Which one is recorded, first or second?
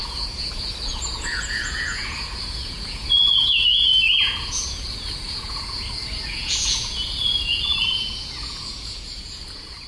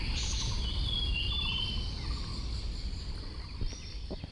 second